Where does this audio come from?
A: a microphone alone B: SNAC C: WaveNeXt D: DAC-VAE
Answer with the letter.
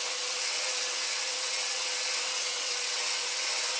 C